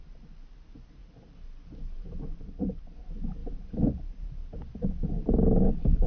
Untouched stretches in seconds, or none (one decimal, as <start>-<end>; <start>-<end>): 0.0-6.1